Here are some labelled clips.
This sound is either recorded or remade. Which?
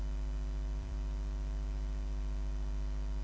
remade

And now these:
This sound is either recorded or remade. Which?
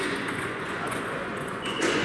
remade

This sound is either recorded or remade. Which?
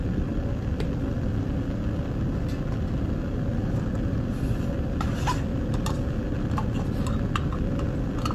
recorded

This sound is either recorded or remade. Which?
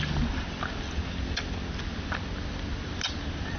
recorded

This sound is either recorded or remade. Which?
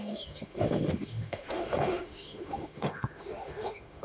remade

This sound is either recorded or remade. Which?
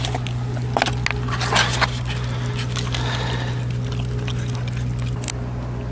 recorded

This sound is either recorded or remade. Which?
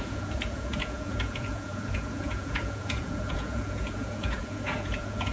remade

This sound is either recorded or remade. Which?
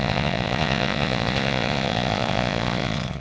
remade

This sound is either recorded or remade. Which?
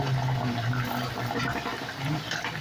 recorded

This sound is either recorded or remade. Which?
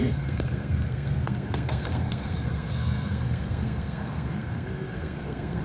remade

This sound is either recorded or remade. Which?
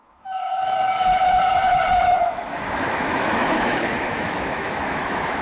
remade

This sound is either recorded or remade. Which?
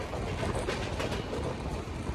recorded